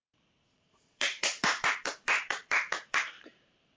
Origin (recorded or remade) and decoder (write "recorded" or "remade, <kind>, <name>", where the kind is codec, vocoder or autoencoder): remade, vocoder, BigVGAN v2